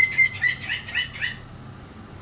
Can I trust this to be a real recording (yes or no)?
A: yes